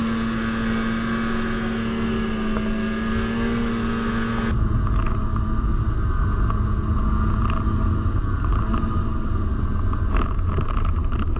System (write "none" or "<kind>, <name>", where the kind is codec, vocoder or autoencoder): none